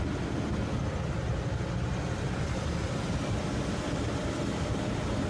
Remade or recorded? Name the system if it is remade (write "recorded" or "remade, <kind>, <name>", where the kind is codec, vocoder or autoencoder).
recorded